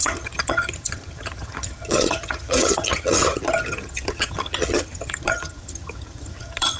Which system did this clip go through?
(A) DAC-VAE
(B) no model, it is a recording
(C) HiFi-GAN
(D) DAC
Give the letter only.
C